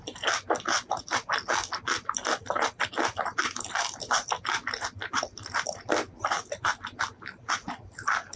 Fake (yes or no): no